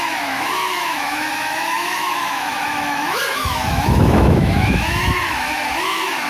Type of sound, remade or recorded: remade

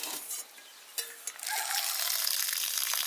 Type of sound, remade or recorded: recorded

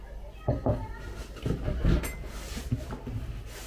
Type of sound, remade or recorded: recorded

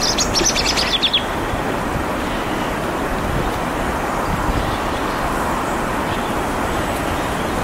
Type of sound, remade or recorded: recorded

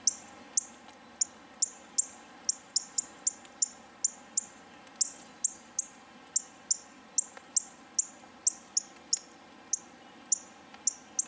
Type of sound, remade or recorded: recorded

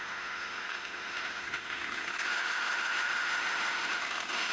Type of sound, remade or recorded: remade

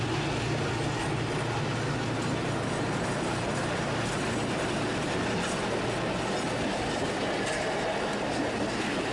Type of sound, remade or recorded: recorded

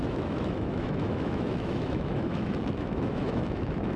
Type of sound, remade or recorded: remade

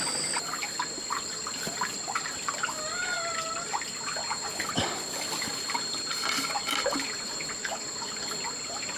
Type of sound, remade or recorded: recorded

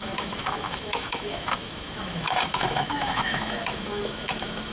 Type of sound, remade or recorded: remade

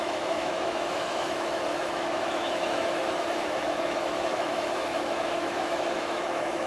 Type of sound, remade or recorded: remade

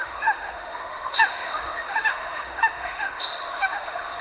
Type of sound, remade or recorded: remade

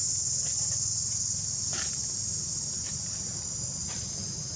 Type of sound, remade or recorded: recorded